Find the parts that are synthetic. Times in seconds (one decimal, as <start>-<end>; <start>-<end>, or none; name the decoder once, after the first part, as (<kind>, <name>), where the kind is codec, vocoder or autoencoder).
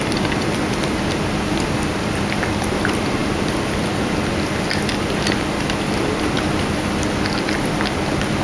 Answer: none